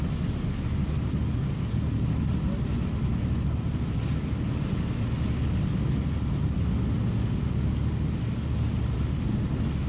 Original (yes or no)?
yes